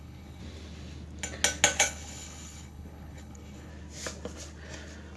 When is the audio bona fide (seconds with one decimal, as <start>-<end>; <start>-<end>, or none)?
0.4-1.8; 3.7-5.2